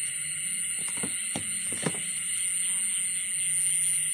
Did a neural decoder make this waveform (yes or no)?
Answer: no